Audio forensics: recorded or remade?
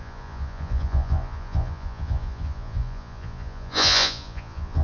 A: remade